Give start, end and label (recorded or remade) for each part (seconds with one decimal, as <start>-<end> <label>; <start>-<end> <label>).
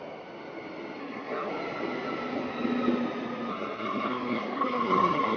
0.0-1.0 recorded; 1.0-1.5 remade; 1.5-3.5 recorded; 3.5-5.4 remade